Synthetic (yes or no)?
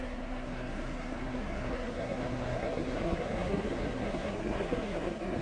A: yes